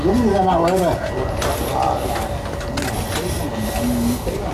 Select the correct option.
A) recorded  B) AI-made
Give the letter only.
A